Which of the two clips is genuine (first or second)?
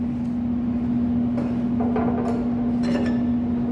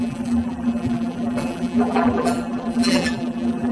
first